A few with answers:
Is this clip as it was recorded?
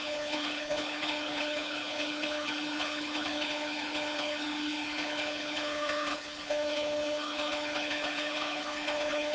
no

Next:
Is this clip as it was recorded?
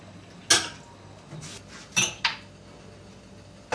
yes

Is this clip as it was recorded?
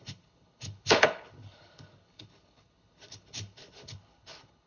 no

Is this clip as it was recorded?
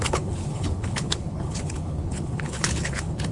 no